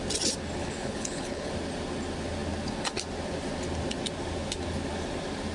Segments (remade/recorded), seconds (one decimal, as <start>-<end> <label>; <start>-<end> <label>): 0.0-0.6 recorded; 0.6-1.5 remade; 1.5-5.5 recorded